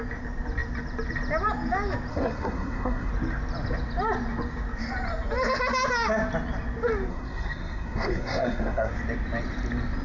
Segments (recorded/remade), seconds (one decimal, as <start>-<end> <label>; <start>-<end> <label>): 0.0-2.1 recorded; 2.1-3.1 remade; 3.1-7.1 recorded; 7.1-8.9 remade; 8.9-10.0 recorded